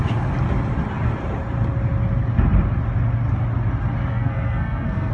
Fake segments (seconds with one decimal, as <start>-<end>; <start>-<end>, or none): 4.1-5.1